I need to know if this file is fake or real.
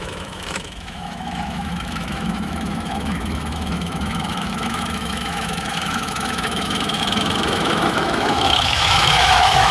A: fake